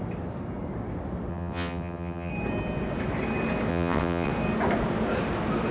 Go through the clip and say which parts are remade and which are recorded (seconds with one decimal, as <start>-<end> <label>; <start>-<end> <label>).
0.0-1.3 recorded; 1.3-2.3 remade; 2.3-3.7 recorded; 3.7-4.3 remade; 4.3-5.7 recorded